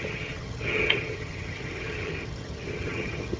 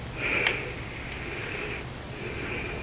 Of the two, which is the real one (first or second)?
second